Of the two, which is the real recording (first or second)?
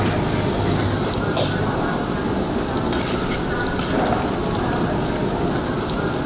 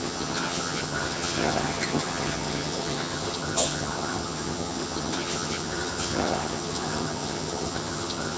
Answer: first